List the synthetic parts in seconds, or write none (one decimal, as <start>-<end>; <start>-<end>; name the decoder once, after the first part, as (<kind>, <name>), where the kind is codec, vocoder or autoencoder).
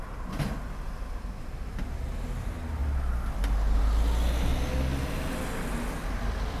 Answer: none